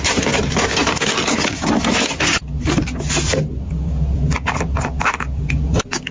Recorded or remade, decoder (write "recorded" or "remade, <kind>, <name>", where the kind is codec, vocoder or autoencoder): recorded